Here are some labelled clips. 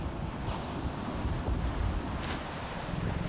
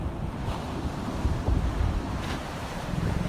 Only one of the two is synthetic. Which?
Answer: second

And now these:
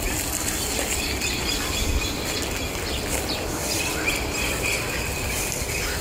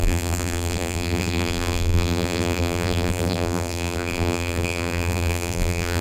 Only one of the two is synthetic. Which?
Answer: second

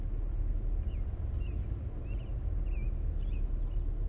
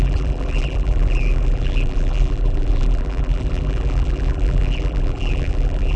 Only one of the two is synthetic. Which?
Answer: second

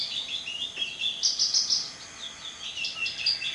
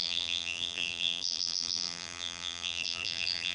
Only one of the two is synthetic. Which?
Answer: second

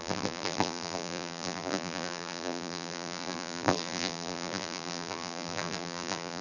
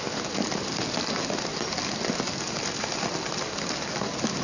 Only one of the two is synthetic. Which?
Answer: first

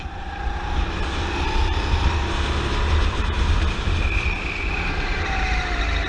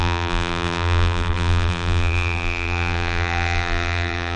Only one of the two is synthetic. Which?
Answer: second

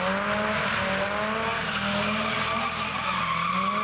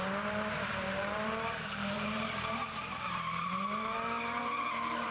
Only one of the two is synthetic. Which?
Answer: second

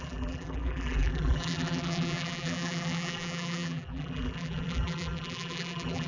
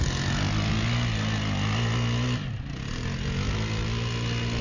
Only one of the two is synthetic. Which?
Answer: first